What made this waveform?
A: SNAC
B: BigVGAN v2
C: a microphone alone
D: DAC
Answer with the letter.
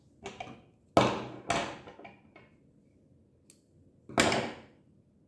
C